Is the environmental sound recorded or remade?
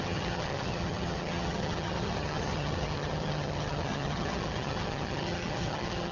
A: remade